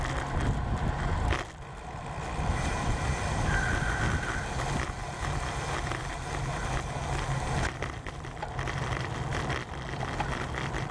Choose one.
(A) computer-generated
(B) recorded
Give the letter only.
A